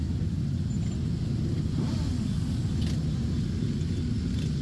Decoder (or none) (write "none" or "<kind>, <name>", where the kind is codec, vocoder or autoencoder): none